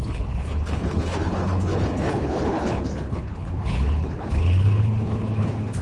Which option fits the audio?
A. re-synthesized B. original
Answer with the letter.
A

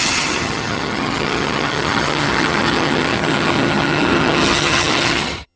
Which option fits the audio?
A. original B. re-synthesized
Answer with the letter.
B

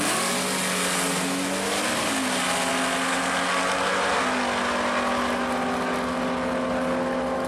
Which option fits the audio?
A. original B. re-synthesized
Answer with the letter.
A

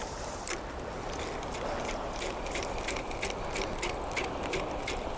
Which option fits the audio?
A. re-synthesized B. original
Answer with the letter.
B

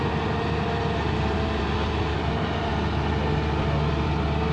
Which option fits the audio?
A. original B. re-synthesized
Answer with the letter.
A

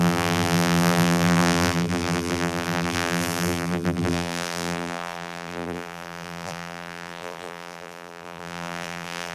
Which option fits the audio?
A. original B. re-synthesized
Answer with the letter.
B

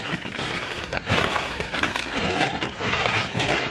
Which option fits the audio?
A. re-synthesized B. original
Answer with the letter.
A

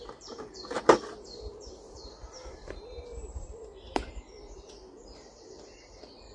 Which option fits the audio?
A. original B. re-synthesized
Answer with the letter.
B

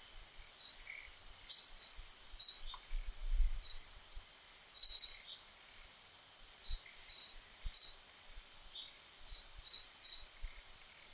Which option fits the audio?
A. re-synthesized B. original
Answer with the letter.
A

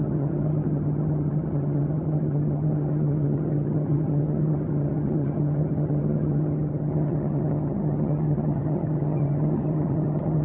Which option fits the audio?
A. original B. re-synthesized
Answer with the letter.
B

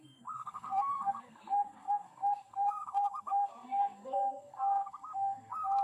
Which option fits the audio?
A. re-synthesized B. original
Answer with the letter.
A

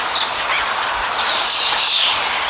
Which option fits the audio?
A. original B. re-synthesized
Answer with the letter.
A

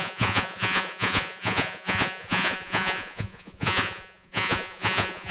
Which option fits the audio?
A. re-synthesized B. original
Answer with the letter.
A